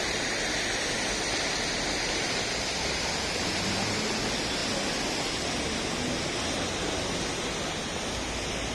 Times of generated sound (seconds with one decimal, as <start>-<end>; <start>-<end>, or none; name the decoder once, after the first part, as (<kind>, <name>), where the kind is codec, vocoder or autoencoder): none